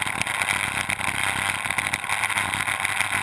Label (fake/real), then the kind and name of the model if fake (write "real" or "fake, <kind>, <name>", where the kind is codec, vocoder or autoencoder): real